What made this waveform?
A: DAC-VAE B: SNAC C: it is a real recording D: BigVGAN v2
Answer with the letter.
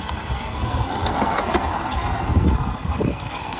B